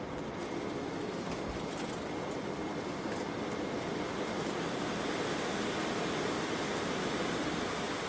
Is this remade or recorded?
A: recorded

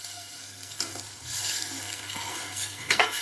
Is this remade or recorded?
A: remade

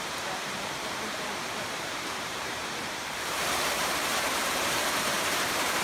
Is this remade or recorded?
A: remade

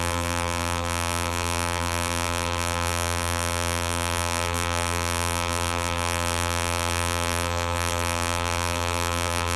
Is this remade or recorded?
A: remade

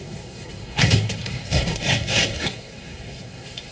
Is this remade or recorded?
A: remade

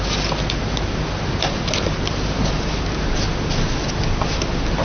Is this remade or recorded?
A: recorded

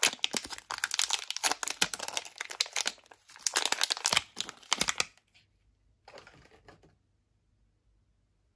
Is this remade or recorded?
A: recorded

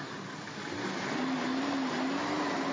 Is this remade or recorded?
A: recorded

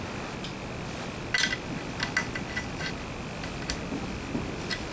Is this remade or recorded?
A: recorded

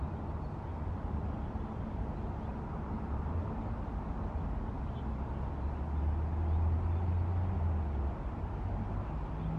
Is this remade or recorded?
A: recorded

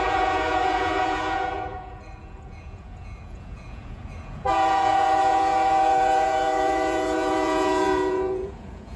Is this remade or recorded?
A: remade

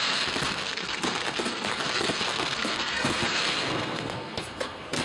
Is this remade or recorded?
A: remade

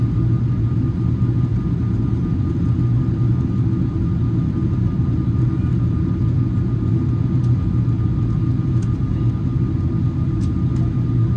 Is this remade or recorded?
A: recorded